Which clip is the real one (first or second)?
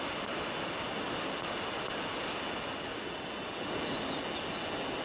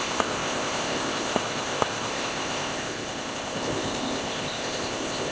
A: first